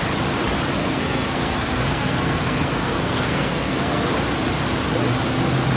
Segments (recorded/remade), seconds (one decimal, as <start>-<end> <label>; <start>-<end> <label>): 0.0-0.8 recorded; 0.8-4.1 remade; 4.1-5.8 recorded